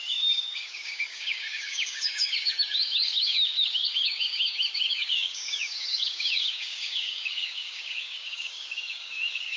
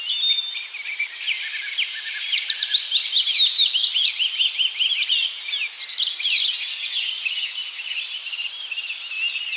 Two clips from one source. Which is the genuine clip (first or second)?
second